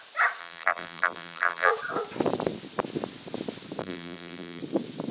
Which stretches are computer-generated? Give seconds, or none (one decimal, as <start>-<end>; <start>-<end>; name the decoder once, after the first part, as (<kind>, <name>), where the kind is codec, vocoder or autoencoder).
0.4-1.7 (vocoder, BigVGAN v2); 3.8-4.6